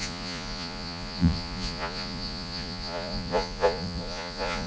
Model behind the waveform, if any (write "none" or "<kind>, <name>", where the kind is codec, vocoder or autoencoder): vocoder, Vocos